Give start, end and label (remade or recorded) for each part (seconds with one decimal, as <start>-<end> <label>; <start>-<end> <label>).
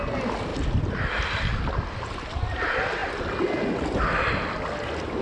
0.0-5.2 recorded